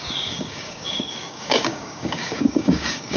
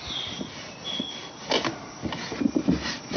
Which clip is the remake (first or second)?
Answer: first